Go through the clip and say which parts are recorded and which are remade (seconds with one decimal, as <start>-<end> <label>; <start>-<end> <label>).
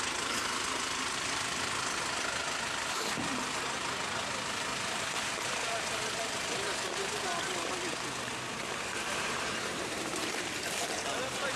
0.0-11.6 recorded